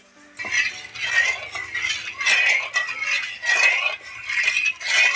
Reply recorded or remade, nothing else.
recorded